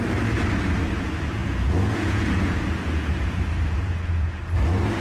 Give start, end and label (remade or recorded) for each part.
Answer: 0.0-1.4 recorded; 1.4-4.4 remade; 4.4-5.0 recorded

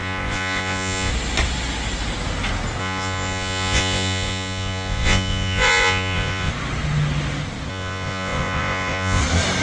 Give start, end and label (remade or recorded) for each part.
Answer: 0.0-1.1 remade; 1.1-2.8 recorded; 2.8-6.5 remade; 6.5-7.7 recorded; 7.7-9.2 remade; 9.2-9.6 recorded

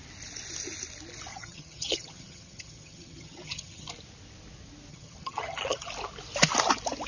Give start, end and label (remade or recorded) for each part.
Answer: 0.0-1.3 recorded; 1.3-3.9 remade; 3.9-4.9 recorded; 4.9-5.9 remade; 5.9-7.1 recorded

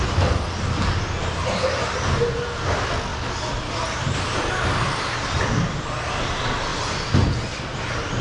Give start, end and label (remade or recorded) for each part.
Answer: 0.0-8.2 recorded

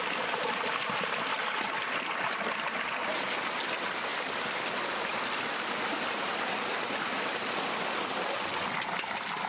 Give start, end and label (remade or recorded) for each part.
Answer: 0.0-9.5 recorded

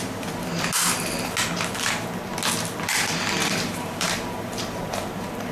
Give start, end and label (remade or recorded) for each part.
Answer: 0.0-3.4 recorded; 3.4-5.5 remade